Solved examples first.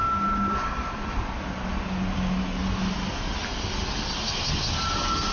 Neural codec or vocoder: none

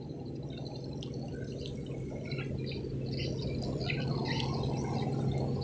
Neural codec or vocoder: none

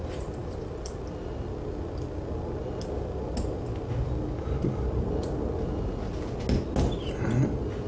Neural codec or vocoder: none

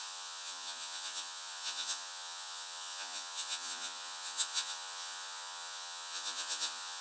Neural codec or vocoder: vocoder, Vocos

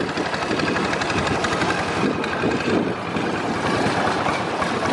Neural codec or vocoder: none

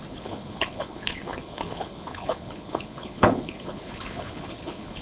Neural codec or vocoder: codec, HILCodec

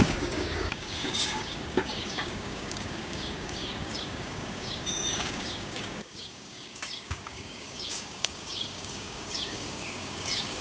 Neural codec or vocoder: codec, DAC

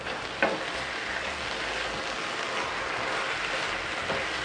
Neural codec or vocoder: none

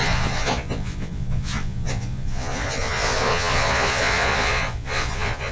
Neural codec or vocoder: vocoder, Vocos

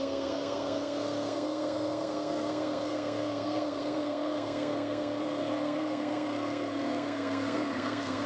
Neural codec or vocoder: codec, SNAC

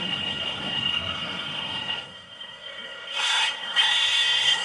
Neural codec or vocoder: codec, SNAC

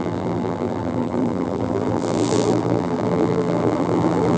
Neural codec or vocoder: vocoder, BigVGAN v2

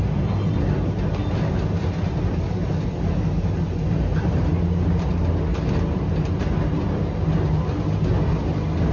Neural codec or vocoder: none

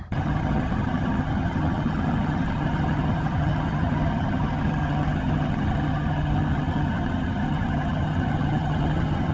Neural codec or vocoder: vocoder, HiFi-GAN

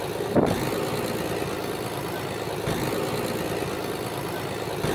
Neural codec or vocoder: none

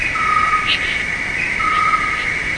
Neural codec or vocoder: none